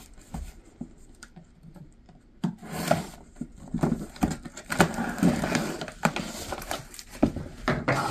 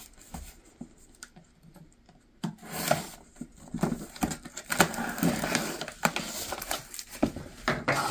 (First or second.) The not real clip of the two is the first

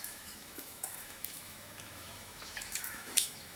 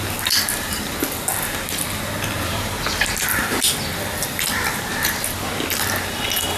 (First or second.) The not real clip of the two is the first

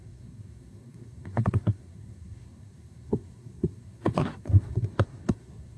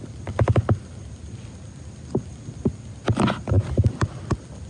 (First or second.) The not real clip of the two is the first